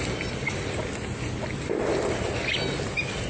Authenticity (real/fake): fake